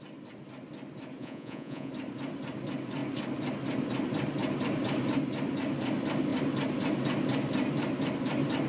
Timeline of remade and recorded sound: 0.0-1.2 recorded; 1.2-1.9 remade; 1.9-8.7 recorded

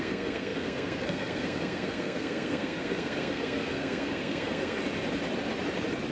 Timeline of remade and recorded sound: 0.0-4.8 remade; 4.8-6.1 recorded